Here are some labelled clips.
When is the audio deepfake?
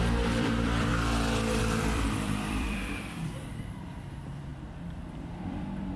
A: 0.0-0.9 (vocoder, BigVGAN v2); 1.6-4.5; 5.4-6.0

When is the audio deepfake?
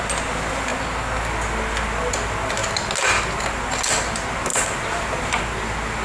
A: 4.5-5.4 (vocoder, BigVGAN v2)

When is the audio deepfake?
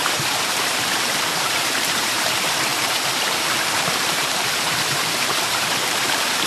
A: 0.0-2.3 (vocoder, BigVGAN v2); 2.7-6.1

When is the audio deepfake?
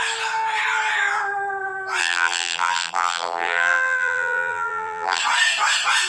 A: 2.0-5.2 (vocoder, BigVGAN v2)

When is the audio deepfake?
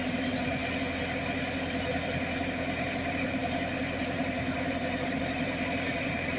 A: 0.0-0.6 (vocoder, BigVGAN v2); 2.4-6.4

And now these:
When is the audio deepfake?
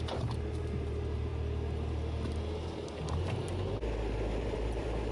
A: 0.0-1.3 (vocoder, BigVGAN v2); 4.4-5.1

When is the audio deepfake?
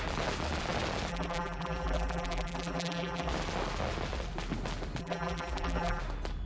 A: 1.1-3.3 (vocoder, BigVGAN v2); 5.0-6.0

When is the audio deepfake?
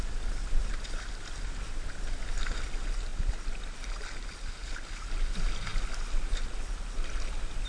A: 3.1-5.1 (vocoder, BigVGAN v2); 5.7-7.2